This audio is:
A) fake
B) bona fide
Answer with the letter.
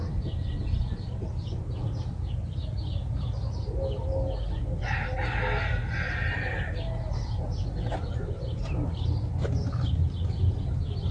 B